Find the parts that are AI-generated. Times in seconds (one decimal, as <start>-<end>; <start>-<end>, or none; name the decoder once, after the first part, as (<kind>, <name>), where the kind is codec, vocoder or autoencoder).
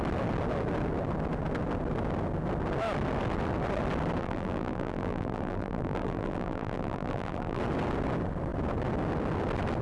4.2-7.6 (vocoder, BigVGAN v2)